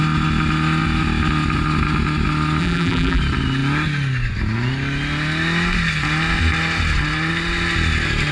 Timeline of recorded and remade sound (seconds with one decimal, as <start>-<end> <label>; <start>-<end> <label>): 0.0-2.6 recorded; 2.6-3.2 remade; 3.2-8.3 recorded